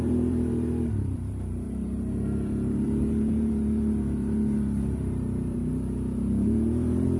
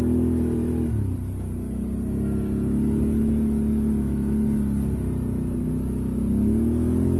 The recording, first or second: second